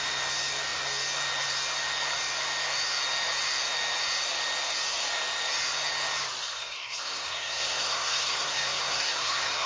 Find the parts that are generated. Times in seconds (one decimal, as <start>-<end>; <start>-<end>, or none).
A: 6.4-9.7